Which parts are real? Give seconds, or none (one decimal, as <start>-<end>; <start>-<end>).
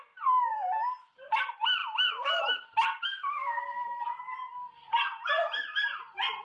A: 0.0-6.4